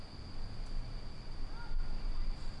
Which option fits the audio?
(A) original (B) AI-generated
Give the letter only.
A